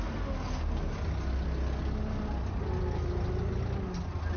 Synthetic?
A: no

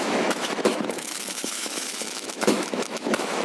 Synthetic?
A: yes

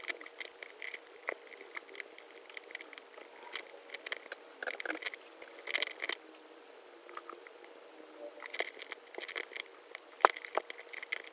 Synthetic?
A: no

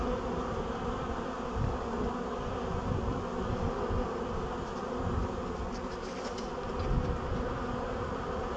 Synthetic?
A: no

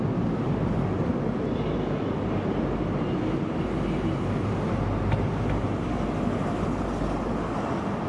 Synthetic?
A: no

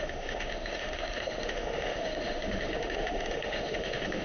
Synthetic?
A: yes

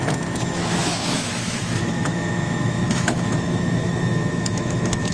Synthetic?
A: yes